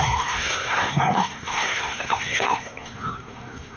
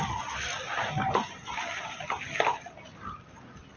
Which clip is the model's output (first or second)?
first